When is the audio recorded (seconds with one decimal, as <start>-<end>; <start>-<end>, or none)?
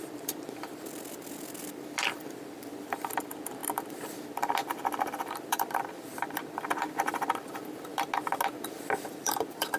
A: 7.9-8.7